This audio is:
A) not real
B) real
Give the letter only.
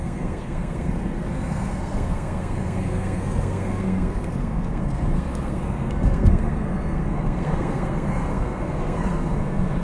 A